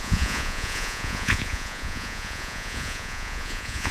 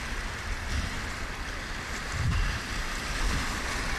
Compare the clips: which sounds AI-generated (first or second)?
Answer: first